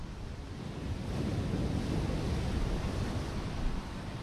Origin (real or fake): real